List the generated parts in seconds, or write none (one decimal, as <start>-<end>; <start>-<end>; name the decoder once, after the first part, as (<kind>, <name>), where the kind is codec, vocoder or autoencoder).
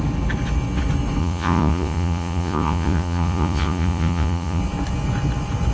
1.2-4.6 (vocoder, Vocos)